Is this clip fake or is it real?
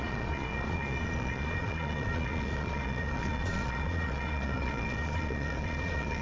fake